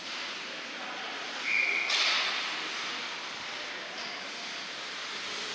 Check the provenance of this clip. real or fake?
real